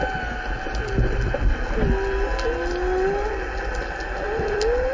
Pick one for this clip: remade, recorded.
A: recorded